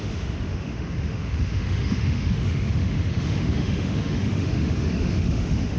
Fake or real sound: fake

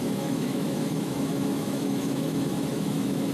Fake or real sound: fake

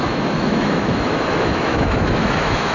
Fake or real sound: fake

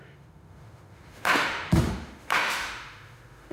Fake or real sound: fake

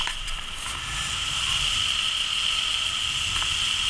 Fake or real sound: real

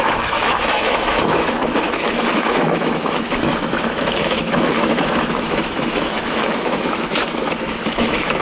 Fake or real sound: fake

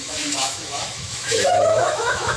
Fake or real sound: fake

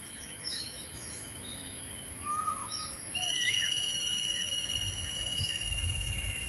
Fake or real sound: fake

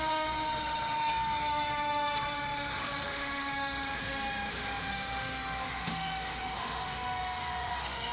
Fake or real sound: fake